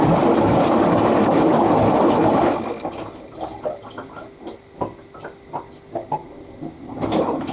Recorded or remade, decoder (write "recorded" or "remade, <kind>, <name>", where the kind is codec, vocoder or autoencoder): recorded